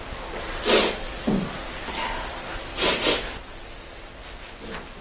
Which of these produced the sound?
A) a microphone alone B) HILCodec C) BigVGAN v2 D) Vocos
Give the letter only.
A